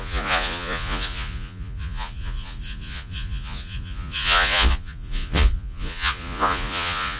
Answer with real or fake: fake